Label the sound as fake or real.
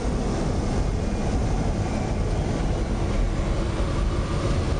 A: real